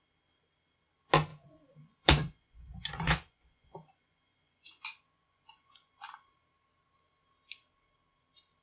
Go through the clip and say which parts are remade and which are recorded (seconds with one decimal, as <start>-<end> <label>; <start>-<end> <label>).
0.0-1.3 recorded; 1.3-5.9 remade; 5.9-8.6 recorded